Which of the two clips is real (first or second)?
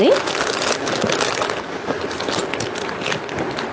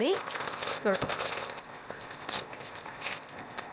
first